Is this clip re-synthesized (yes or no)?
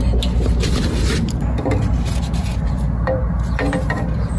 yes